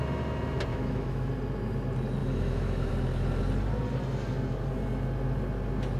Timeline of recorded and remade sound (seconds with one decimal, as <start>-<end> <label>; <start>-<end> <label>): 0.0-0.7 recorded; 0.7-1.3 remade; 1.3-2.2 recorded; 2.2-2.9 remade; 2.9-6.0 recorded